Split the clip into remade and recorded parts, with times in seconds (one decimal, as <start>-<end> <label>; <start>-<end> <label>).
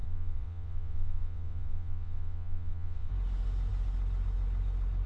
0.0-3.1 remade; 3.1-5.1 recorded